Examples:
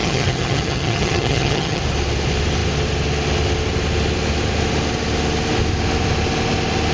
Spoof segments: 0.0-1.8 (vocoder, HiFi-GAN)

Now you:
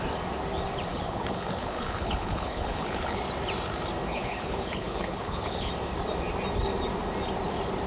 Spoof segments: 0.9-3.2 (codec, HILCodec); 4.1-5.7

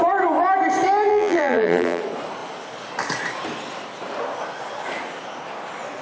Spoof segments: 1.1-2.0 (vocoder, BigVGAN v2)

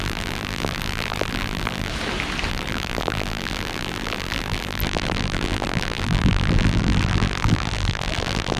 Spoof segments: 0.0-1.9 (vocoder, BigVGAN v2); 2.5-8.6

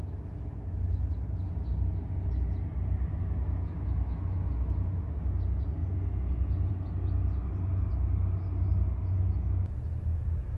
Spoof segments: 0.0-1.1 (autoencoder, DAC-VAE); 3.1-5.2